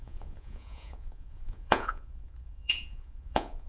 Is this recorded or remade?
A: remade